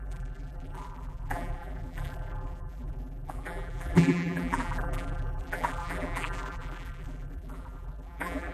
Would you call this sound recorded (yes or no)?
no